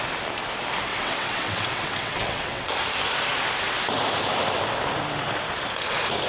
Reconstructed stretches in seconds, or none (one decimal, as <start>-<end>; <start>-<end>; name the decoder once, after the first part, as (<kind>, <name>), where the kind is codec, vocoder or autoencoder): 0.9-2.7 (vocoder, WaveNeXt)